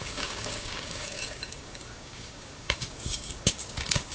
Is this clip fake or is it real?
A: fake